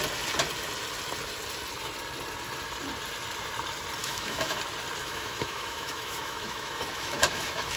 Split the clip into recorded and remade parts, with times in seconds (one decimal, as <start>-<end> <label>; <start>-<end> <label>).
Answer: 0.0-4.0 recorded; 4.0-4.6 remade; 4.6-5.0 recorded; 5.0-7.8 remade